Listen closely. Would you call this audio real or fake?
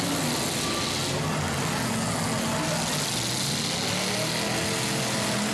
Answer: real